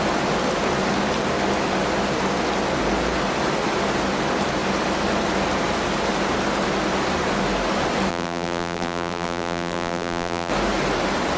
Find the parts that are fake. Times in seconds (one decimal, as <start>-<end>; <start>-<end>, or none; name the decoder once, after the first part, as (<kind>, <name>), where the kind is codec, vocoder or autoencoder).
8.1-10.5 (vocoder, BigVGAN v2)